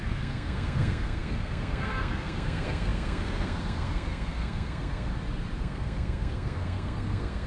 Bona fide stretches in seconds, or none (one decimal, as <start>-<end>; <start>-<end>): 5.1-5.6